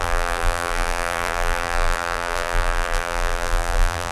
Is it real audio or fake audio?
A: fake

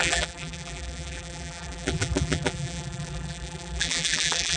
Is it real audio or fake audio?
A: fake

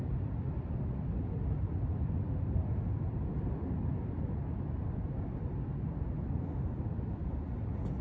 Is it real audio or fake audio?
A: real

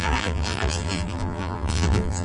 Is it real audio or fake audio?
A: fake